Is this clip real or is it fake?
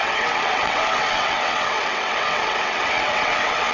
fake